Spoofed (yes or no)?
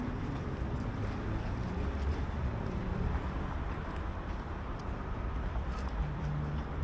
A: yes